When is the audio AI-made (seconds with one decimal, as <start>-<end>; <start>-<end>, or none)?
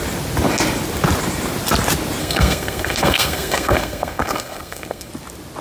2.2-5.1